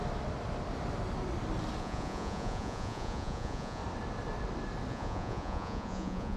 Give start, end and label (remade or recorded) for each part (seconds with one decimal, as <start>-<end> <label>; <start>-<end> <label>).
0.0-1.8 recorded; 1.8-3.8 remade; 3.8-4.9 recorded; 4.9-6.4 remade